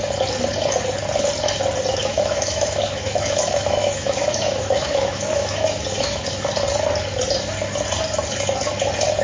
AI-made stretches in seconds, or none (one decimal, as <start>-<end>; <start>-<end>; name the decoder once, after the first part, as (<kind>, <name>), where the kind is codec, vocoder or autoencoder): 2.0-6.3 (autoencoder, DAC-VAE)